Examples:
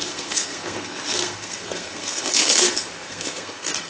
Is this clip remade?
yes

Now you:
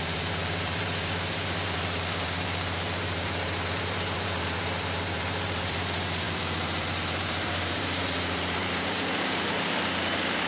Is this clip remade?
yes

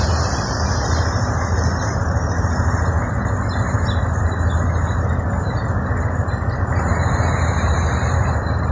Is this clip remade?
no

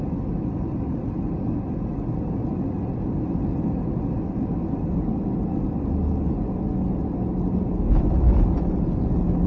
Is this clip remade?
no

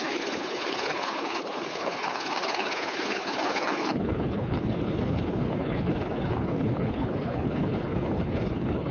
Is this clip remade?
yes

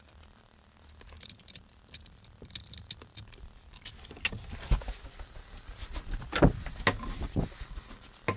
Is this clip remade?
no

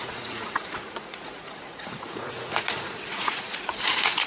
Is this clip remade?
yes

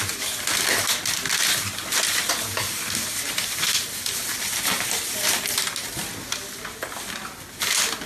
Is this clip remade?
no